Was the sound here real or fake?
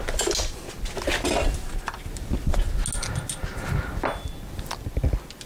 real